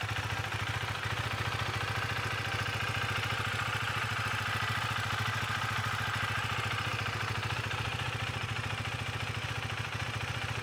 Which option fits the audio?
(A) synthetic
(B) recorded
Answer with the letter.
B